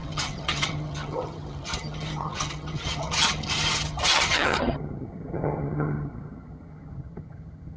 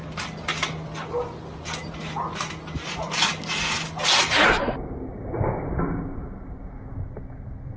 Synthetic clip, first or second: first